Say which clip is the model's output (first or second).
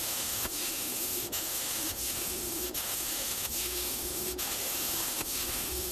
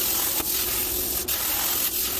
first